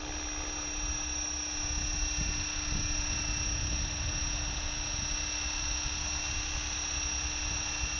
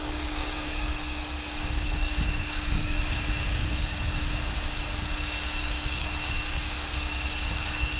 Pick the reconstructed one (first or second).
second